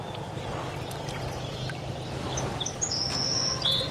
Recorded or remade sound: recorded